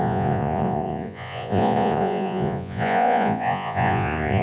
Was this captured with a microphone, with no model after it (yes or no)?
no